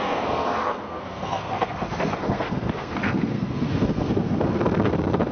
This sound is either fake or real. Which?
fake